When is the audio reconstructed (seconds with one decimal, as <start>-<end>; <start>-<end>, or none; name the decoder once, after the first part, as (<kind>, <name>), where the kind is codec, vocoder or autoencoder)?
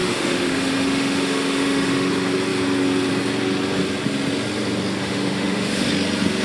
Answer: 0.0-2.1 (autoencoder, DAC-VAE); 5.0-5.9